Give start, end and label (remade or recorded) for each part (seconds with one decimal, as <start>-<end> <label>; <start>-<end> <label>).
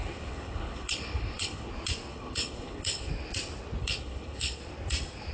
0.0-1.7 remade; 1.7-2.1 recorded; 2.1-3.1 remade; 3.1-3.8 recorded; 3.8-4.6 remade; 4.6-5.3 recorded